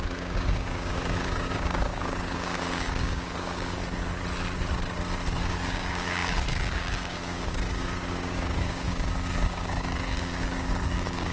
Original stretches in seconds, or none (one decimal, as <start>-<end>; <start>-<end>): 3.8-5.4